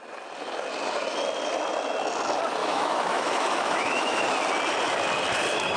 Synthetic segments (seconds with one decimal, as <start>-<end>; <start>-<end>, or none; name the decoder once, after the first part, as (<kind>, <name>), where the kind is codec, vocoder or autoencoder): 2.6-4.2 (autoencoder, DAC-VAE)

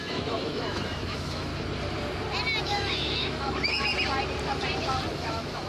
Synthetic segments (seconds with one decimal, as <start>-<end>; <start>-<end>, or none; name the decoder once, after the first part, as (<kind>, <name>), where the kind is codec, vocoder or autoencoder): 0.0-1.5 (autoencoder, DAC-VAE); 2.6-3.9; 5.1-5.7